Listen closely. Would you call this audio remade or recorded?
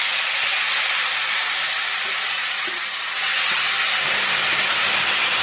recorded